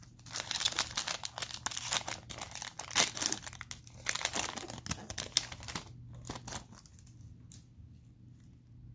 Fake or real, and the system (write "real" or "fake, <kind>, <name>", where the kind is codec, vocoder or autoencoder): real